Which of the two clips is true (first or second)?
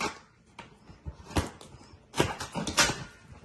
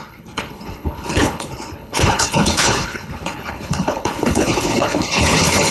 first